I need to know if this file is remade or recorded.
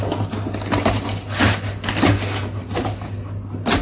recorded